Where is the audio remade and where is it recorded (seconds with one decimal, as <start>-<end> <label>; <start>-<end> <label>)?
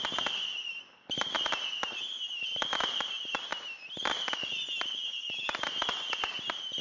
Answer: 0.0-6.8 recorded